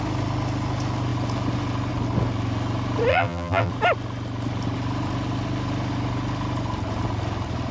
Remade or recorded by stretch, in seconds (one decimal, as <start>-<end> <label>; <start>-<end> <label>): 0.0-3.1 recorded; 3.1-3.7 remade; 3.7-7.7 recorded